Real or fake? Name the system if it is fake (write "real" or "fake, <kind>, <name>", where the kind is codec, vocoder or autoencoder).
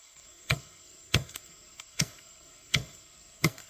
fake, codec, SNAC